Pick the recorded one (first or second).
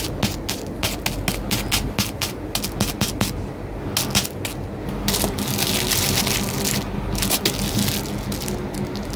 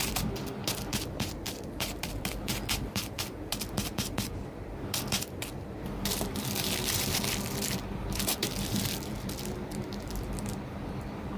first